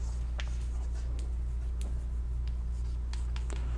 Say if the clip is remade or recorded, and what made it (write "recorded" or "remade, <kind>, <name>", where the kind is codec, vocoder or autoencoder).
recorded